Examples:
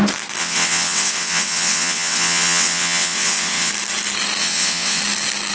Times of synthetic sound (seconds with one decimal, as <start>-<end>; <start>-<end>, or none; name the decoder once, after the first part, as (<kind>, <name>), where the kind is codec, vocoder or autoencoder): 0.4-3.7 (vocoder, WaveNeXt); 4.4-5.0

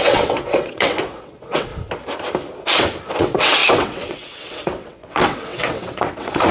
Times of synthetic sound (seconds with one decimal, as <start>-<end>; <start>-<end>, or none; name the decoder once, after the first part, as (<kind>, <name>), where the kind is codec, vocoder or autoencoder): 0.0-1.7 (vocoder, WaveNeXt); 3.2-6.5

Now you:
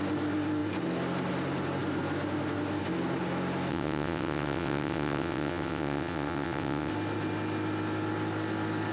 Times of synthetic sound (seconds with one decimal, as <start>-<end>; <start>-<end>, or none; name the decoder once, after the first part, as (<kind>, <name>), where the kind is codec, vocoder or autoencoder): 3.7-6.9 (vocoder, WaveNeXt)

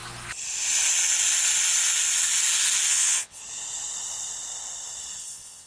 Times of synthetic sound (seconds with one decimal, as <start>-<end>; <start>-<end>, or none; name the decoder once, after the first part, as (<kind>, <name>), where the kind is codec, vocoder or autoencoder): 2.9-3.4 (vocoder, WaveNeXt); 5.2-5.7